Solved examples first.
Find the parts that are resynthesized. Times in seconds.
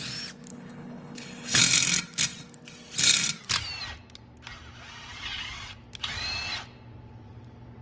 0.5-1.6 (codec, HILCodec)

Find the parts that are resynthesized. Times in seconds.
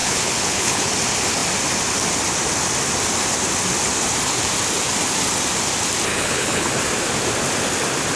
0.0-0.9 (codec, HILCodec); 6.1-6.7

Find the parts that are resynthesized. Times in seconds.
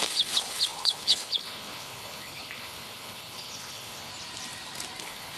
0.0-4.1 (codec, HILCodec); 5.0-5.4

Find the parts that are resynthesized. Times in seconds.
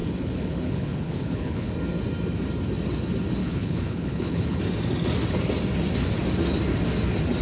0.0-1.7 (codec, HILCodec); 3.4-4.6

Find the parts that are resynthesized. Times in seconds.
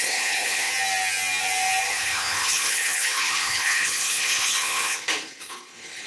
0.0-0.7 (codec, HILCodec); 1.9-6.1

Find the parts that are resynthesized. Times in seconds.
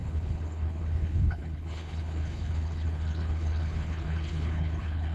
0.0-5.1 (codec, HILCodec)